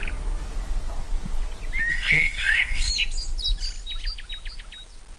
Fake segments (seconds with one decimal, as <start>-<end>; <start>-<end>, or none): 1.9-2.9